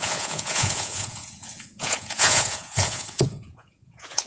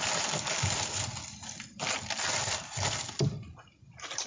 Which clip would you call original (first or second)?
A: second